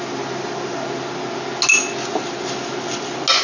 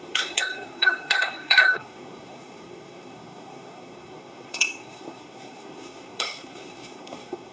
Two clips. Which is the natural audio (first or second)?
first